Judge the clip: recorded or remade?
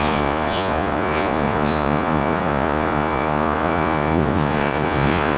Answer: remade